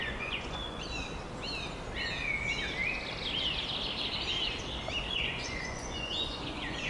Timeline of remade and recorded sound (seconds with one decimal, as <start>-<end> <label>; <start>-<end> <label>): 0.0-1.0 remade; 1.0-5.1 recorded; 5.1-6.9 remade